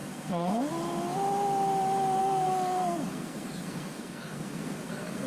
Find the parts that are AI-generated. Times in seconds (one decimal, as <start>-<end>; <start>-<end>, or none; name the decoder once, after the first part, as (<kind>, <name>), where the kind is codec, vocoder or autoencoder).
0.0-0.7 (codec, SNAC); 2.2-5.3